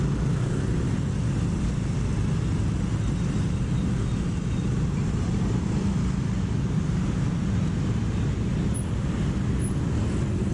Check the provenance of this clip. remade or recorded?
recorded